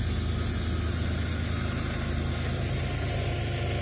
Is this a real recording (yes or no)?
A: yes